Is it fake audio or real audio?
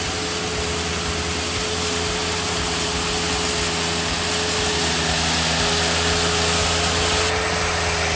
real